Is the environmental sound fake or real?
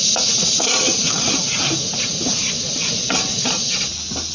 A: real